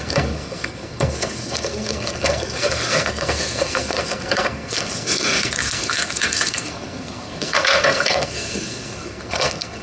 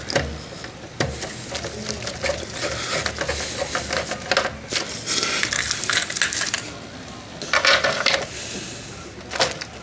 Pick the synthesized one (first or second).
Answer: first